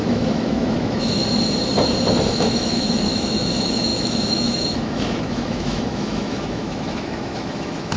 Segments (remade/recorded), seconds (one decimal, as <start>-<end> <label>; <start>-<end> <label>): 0.0-1.2 remade; 1.2-2.3 recorded; 2.3-8.0 remade